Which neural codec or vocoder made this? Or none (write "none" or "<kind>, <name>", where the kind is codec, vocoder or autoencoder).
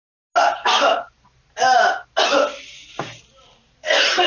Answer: none